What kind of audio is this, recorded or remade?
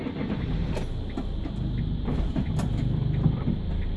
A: recorded